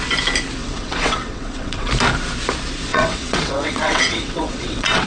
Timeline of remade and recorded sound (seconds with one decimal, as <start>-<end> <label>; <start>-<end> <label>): 0.0-0.6 recorded; 0.6-1.9 remade; 1.9-2.9 recorded; 2.9-5.1 remade